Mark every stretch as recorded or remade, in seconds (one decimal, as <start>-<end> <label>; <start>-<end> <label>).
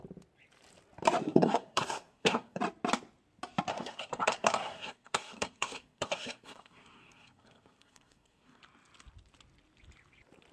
0.0-1.2 recorded; 1.2-2.6 remade; 2.6-3.7 recorded; 3.7-8.6 remade; 8.6-10.5 recorded